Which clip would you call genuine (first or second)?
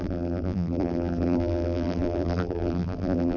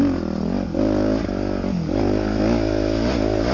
second